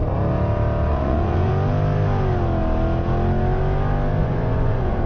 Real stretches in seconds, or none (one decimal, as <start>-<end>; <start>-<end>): 0.0-0.9; 1.5-4.2